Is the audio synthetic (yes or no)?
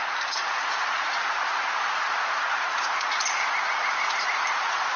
yes